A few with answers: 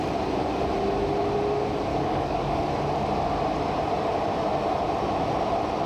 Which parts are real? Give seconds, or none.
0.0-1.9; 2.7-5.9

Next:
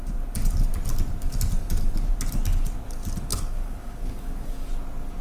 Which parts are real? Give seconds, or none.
0.0-3.3; 4.7-5.2

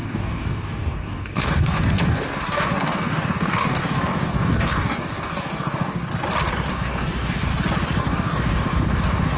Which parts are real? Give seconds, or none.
6.1-6.7; 7.5-8.0